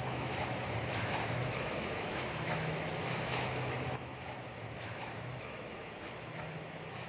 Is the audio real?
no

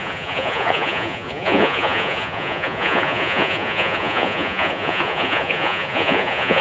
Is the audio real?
no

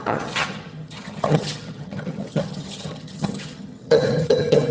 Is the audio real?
no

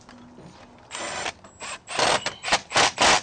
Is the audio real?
yes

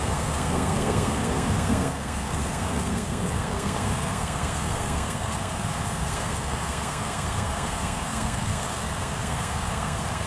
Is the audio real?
no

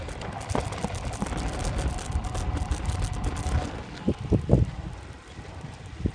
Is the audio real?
no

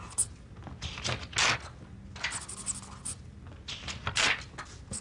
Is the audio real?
yes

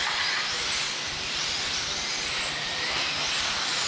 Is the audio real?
yes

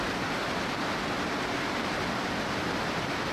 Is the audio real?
yes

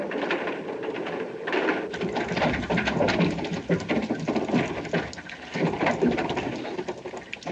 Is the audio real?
yes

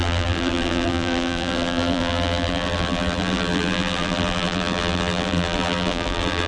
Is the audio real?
no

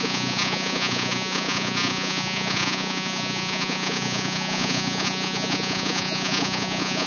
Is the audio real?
no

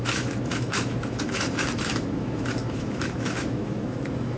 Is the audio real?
no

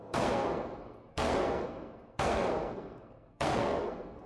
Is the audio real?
no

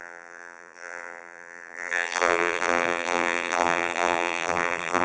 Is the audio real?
no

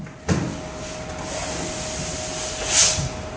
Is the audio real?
yes